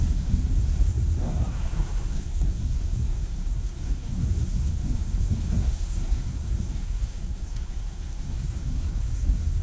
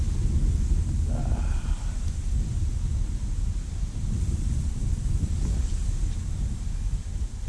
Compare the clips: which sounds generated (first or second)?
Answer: first